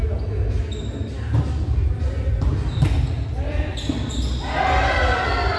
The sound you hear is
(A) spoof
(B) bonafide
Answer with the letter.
B